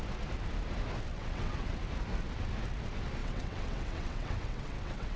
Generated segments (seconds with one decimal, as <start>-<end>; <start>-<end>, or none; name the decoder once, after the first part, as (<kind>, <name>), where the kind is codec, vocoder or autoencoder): 1.1-1.8 (vocoder, WaveNeXt); 3.2-5.2